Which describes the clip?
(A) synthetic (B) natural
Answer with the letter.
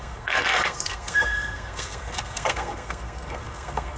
A